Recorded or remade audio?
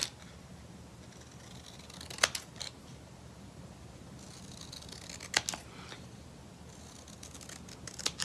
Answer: recorded